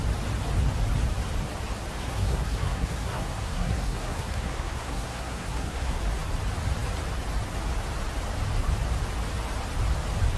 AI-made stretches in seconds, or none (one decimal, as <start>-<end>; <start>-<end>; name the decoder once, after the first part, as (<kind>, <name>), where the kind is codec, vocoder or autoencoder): 2.0-6.0 (codec, SNAC)